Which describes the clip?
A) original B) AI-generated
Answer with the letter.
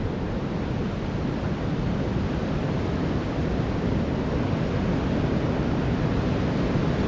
A